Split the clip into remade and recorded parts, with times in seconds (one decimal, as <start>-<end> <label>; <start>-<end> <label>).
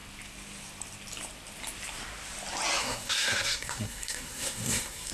0.0-2.8 recorded; 2.8-5.1 remade